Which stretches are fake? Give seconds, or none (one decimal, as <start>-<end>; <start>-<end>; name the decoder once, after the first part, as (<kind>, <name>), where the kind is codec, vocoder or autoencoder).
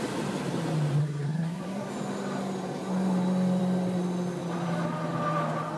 1.0-1.9 (codec, SNAC)